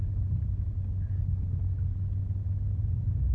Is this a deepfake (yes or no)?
no